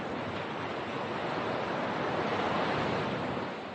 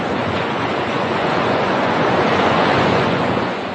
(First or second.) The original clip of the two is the first